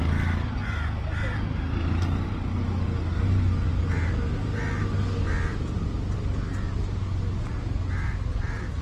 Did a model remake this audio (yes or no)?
no